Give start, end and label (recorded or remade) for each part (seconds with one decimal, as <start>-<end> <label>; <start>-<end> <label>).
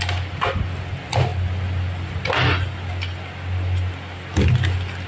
0.0-5.1 recorded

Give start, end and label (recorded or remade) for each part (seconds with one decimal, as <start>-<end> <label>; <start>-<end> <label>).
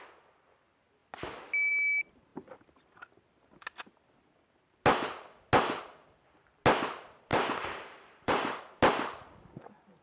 0.0-7.3 recorded; 7.3-8.6 remade; 8.6-10.0 recorded